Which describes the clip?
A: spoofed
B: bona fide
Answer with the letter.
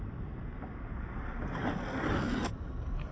B